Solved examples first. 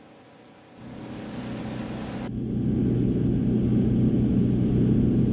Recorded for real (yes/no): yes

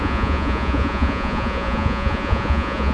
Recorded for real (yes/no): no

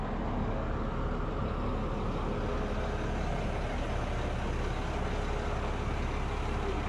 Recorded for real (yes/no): yes